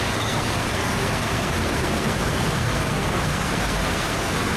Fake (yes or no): yes